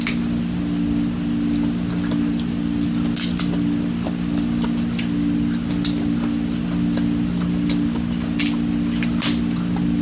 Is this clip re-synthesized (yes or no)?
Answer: no